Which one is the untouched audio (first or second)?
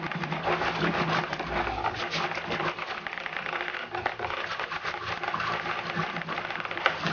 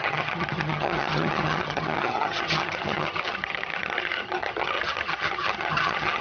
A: first